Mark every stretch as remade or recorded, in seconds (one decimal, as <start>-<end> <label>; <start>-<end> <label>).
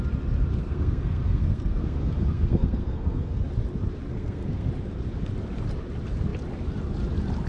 0.0-0.5 recorded; 0.5-3.4 remade; 3.4-4.1 recorded; 4.1-4.7 remade; 4.7-7.5 recorded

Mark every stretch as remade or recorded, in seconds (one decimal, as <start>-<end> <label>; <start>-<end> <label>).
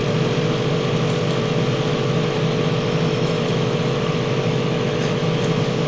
0.0-1.9 recorded; 1.9-5.4 remade; 5.4-5.9 recorded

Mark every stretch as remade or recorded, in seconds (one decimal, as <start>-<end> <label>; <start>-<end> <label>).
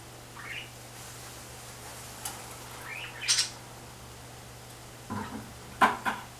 0.0-6.4 recorded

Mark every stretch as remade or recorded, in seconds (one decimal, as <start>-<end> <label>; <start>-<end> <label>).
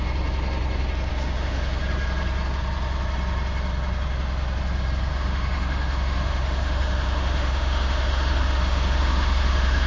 0.0-1.1 recorded; 1.1-1.8 remade; 1.8-5.1 recorded; 5.1-9.9 remade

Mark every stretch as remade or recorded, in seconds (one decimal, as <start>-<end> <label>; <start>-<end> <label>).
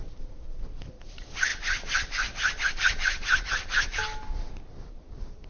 0.0-5.5 recorded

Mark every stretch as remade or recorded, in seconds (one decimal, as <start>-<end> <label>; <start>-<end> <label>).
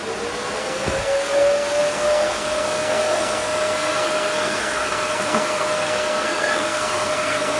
0.0-0.6 recorded; 0.6-7.6 remade